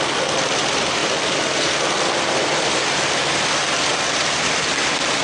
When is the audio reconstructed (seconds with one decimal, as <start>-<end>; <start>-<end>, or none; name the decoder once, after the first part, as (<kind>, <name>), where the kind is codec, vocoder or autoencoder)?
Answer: 0.0-1.0 (vocoder, BigVGAN v2); 1.8-3.9